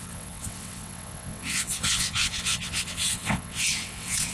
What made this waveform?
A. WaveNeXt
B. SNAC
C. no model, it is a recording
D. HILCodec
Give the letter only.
A